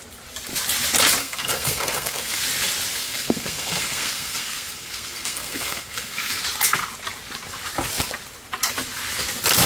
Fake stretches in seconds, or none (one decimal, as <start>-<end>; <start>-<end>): 1.2-2.4; 3.0-6.4